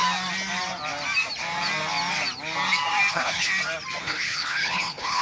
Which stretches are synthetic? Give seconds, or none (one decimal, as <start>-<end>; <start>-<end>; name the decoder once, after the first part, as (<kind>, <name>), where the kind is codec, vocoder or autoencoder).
3.1-3.5 (codec, HILCodec); 4.0-5.2